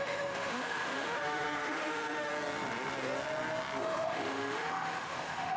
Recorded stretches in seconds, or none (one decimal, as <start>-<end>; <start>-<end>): 2.3-3.8